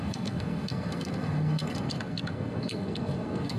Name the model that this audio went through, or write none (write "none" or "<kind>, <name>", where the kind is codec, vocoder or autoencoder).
codec, SNAC